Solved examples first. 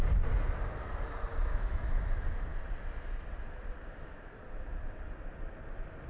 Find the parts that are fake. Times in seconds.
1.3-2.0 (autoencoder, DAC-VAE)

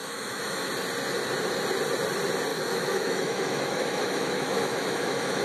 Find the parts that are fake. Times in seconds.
0.0-0.7 (autoencoder, DAC-VAE); 2.5-5.4

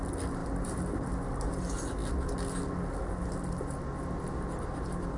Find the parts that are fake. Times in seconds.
none